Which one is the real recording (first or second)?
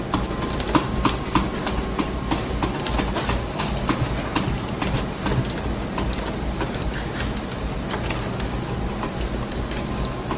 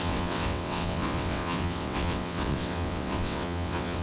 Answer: first